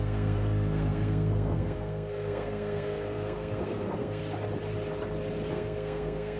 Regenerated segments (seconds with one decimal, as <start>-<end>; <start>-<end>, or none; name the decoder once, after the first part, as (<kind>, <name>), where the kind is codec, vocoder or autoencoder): 0.0-4.2 (codec, SNAC); 5.5-6.4